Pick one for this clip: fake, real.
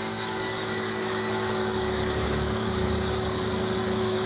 fake